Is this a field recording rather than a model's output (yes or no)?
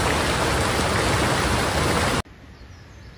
yes